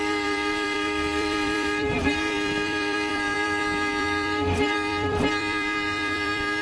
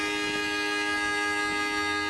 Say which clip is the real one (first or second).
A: second